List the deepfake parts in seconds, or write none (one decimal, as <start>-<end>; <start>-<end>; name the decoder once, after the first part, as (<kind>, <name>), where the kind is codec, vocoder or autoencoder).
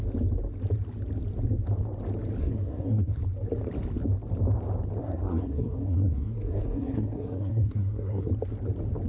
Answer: 2.4-3.2 (codec, SNAC); 5.0-8.3